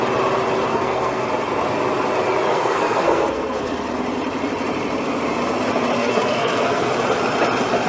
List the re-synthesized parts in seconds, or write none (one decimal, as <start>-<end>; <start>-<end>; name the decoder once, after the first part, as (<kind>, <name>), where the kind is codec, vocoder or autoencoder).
0.7-1.3 (codec, SNAC); 2.5-3.7; 6.0-6.9